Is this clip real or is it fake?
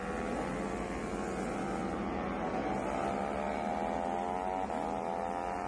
real